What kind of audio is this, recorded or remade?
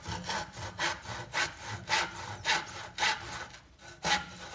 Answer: recorded